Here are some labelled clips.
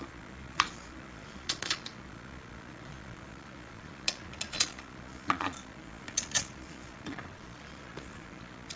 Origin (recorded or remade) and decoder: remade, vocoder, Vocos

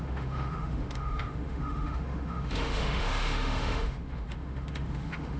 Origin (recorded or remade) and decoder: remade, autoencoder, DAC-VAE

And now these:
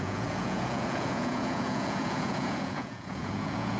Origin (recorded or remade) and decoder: remade, vocoder, Vocos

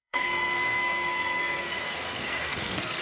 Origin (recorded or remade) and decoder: remade, codec, SNAC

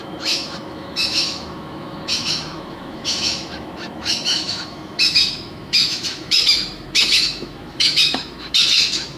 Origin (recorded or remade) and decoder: remade, autoencoder, DAC-VAE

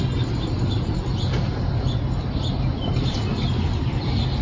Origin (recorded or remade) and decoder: recorded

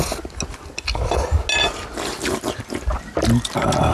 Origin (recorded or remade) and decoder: recorded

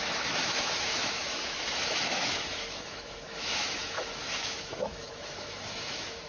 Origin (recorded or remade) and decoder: remade, autoencoder, DAC-VAE